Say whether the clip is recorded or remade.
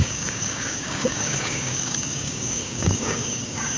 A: remade